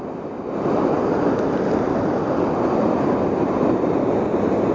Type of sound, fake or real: real